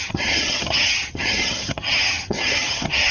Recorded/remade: remade